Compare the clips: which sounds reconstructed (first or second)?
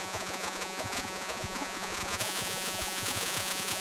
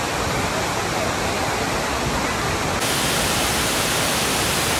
first